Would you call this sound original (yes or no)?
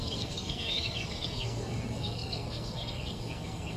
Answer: no